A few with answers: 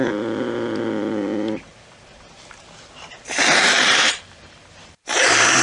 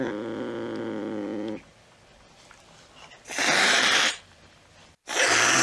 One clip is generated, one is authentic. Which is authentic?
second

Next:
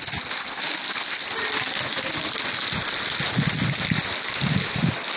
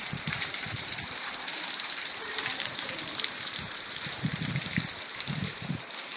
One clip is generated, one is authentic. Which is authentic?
first